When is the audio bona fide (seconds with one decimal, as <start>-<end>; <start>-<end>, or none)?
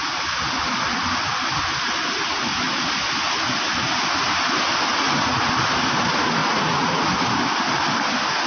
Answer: 0.0-4.9; 5.4-6.4; 7.1-8.5